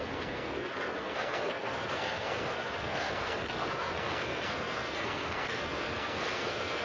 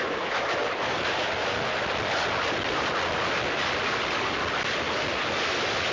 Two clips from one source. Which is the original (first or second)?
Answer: second